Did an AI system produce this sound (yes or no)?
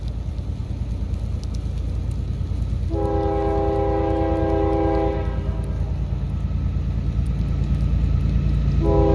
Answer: no